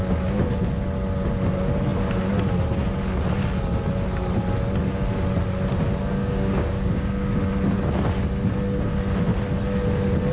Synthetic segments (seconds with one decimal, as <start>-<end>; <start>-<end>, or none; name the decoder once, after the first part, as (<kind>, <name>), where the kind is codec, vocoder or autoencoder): 6.2-7.4 (codec, DAC)